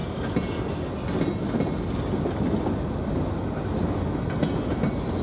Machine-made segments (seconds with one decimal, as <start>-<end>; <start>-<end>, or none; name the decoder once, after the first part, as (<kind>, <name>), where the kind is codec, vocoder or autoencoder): none